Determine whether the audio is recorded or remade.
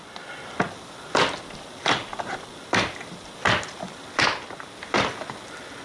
recorded